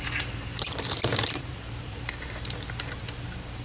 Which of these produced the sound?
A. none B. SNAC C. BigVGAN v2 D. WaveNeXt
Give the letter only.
C